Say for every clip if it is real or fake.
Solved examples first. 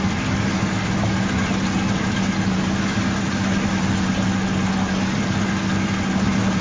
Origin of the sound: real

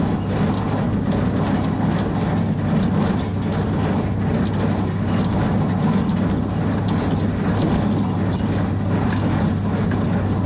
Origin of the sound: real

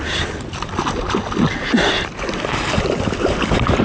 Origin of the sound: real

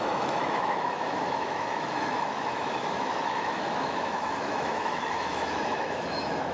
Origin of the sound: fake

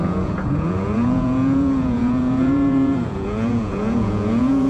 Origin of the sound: fake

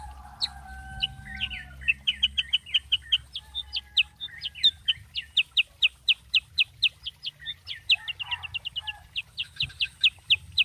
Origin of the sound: real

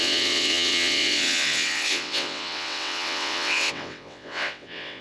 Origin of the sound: fake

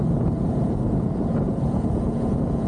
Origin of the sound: fake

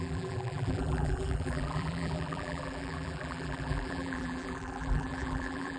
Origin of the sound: fake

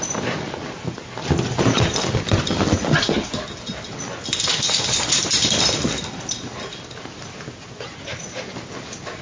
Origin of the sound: real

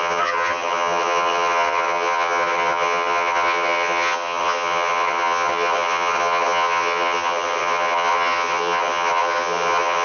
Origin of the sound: fake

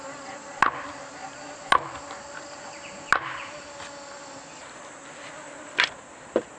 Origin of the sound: real